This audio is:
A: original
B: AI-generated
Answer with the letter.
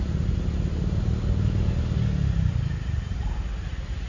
A